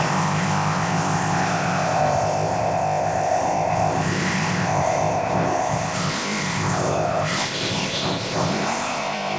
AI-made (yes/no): yes